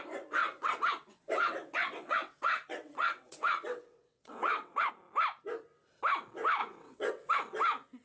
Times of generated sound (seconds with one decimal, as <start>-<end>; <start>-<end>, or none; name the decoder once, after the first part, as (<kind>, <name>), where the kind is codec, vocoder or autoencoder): 0.4-4.9 (vocoder, WaveNeXt); 6.6-7.3